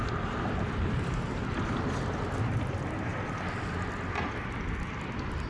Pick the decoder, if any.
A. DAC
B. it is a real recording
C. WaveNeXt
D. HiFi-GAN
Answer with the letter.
B